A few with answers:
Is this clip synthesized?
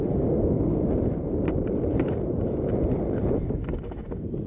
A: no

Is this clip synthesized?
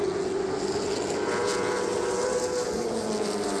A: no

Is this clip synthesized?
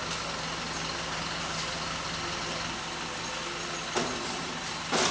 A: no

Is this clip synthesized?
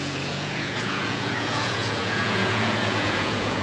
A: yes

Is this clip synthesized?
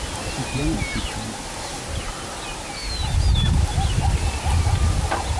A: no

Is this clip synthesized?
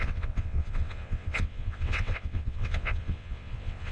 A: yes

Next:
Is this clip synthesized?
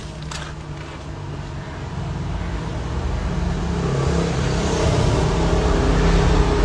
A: no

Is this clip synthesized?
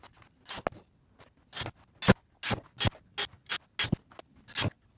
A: no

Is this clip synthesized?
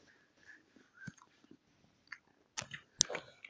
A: no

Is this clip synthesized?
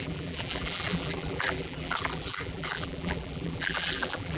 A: yes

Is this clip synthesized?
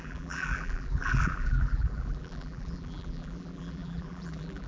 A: yes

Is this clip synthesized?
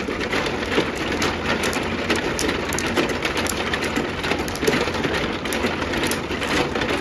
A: no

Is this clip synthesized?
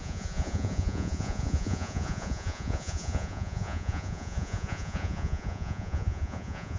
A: yes